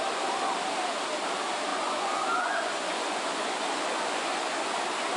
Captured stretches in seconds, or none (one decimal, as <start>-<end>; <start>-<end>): 0.0-1.7; 4.7-5.2